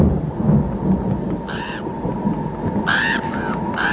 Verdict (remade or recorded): recorded